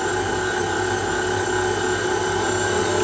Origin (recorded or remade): recorded